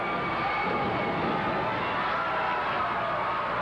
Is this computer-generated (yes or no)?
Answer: no